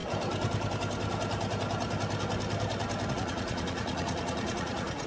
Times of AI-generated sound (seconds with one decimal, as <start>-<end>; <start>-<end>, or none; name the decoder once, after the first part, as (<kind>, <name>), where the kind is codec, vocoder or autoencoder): 3.1-5.1 (vocoder, Vocos)